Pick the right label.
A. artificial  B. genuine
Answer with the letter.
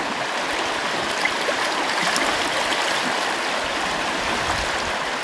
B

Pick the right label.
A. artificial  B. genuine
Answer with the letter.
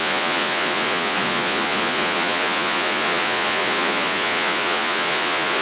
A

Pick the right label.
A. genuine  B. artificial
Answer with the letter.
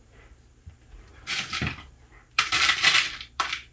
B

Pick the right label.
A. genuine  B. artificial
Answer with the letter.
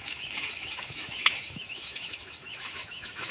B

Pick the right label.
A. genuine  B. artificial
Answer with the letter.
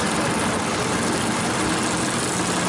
A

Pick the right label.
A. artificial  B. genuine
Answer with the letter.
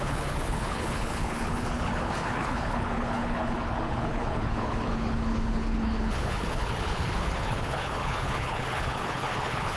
A